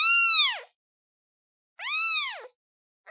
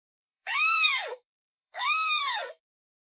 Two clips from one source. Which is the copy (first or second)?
second